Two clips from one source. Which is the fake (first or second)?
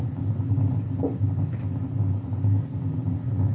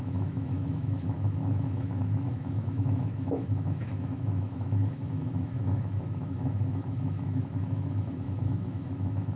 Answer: second